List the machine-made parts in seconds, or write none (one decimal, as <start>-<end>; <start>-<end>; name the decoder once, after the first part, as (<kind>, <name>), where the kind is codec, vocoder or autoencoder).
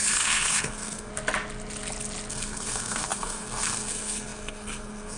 0.0-1.1 (codec, SNAC); 2.3-5.2